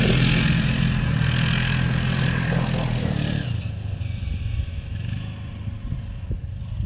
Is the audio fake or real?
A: real